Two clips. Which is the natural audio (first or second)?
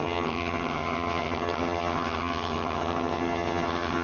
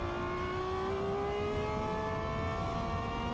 second